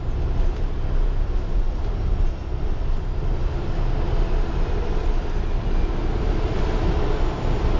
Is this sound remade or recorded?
recorded